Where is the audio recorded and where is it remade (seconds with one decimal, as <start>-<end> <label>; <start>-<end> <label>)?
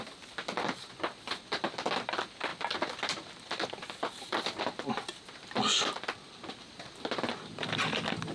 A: 0.0-8.3 recorded